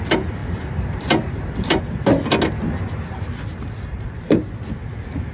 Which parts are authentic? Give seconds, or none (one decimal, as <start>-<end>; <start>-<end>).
0.0-0.4; 1.8-3.5; 4.4-5.3